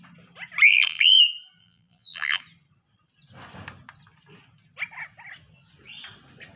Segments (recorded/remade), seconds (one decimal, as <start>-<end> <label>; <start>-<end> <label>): 0.0-0.7 recorded; 0.7-1.2 remade; 1.2-1.6 recorded; 1.6-2.4 remade; 2.4-6.6 recorded